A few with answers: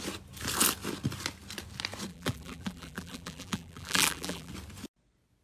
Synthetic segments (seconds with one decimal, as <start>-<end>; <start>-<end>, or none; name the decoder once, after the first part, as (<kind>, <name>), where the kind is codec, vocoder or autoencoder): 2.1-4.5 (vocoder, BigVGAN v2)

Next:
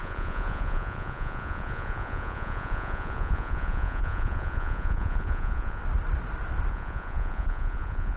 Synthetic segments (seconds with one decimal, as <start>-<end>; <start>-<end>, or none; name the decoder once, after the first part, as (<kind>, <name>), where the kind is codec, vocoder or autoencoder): 0.0-5.8 (vocoder, Vocos); 6.7-8.2

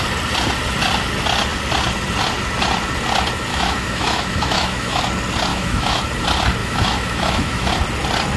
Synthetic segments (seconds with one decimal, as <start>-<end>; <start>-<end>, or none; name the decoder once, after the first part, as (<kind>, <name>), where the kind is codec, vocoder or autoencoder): 3.5-5.0 (autoencoder, DAC-VAE); 5.5-6.0; 6.6-7.7

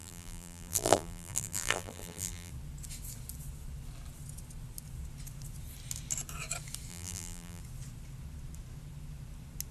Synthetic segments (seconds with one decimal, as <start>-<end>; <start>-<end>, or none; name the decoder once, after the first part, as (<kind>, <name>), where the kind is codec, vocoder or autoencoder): 0.0-2.5 (vocoder, BigVGAN v2); 6.9-7.6